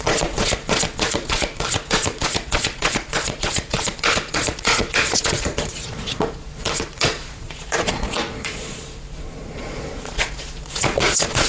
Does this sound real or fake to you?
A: fake